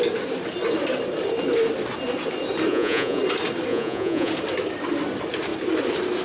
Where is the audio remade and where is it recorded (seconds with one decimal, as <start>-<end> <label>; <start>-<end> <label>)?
0.0-2.7 recorded; 2.7-3.2 remade; 3.2-3.7 recorded; 3.7-4.3 remade; 4.3-6.2 recorded